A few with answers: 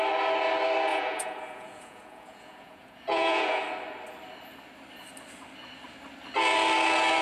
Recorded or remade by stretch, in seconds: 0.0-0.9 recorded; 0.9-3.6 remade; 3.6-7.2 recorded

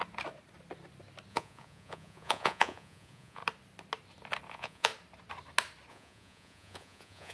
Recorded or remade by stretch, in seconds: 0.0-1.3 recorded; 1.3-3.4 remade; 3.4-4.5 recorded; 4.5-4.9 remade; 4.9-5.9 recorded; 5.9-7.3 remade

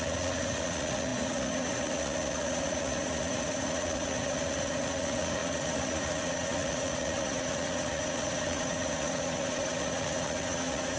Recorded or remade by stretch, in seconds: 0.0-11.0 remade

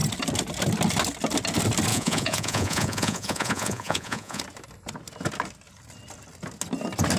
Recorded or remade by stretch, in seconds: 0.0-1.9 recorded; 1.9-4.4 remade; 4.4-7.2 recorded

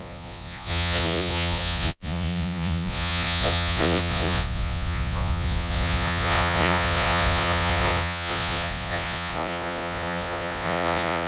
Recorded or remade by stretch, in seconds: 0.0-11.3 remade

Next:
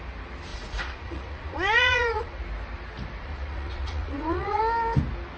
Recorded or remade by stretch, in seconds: 0.0-0.5 recorded; 0.5-2.4 remade; 2.4-3.2 recorded; 3.2-4.6 remade; 4.6-5.4 recorded